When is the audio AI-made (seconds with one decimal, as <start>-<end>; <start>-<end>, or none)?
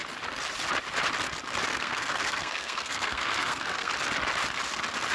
1.7-3.9